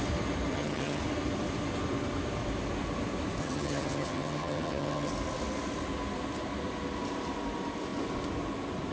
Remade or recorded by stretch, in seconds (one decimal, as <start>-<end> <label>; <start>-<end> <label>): 0.0-0.5 recorded; 0.5-1.0 remade; 1.0-3.4 recorded; 3.4-5.1 remade; 5.1-8.9 recorded